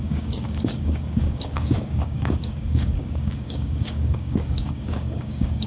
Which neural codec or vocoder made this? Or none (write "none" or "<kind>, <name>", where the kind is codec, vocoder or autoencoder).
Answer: codec, DAC